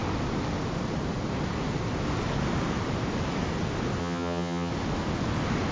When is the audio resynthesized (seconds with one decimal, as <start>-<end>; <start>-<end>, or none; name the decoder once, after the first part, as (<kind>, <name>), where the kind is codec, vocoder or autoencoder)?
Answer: 4.0-4.7 (vocoder, HiFi-GAN)